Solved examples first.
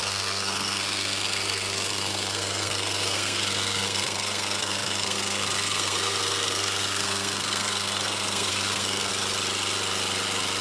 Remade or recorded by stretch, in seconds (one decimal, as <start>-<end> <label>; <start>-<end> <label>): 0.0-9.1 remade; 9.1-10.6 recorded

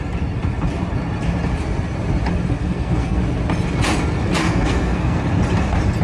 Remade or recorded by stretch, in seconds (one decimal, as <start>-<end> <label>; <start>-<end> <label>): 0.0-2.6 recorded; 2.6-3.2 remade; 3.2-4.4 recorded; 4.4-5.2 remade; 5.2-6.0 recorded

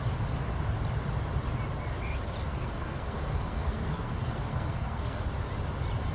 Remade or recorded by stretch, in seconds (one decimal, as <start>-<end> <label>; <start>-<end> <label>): 0.0-2.5 recorded; 2.5-5.2 remade; 5.2-6.1 recorded

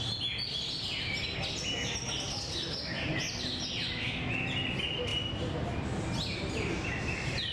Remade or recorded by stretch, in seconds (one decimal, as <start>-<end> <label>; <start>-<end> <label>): 0.0-7.5 recorded